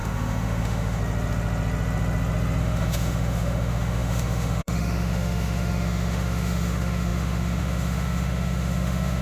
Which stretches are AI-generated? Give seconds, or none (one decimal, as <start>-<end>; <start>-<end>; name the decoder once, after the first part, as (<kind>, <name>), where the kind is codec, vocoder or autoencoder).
0.0-1.0 (autoencoder, DAC-VAE); 2.6-9.2